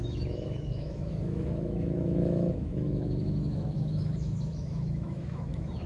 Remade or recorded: remade